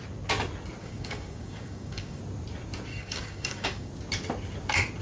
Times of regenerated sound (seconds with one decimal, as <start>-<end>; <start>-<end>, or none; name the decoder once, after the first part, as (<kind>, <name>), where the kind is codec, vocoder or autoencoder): 0.8-2.2 (codec, DAC); 2.9-3.9